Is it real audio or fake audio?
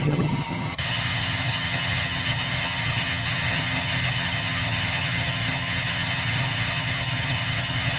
fake